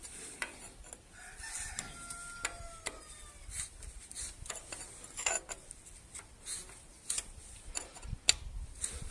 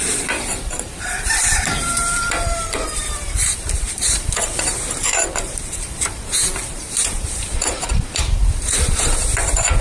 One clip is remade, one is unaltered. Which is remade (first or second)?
second